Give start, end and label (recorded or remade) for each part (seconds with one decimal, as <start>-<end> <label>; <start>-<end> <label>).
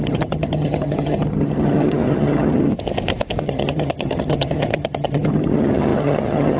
0.0-2.7 remade; 2.7-3.4 recorded; 3.4-6.6 remade